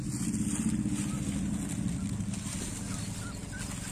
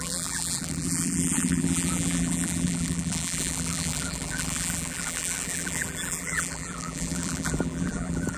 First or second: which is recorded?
first